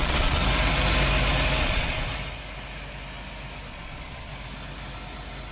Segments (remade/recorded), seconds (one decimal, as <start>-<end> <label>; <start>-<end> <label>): 0.0-0.4 remade; 0.4-1.6 recorded; 1.6-2.1 remade; 2.1-3.7 recorded; 3.7-4.3 remade; 4.3-5.5 recorded